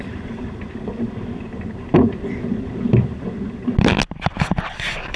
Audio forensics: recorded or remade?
recorded